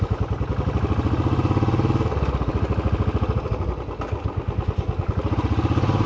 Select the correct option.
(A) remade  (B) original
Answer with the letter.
B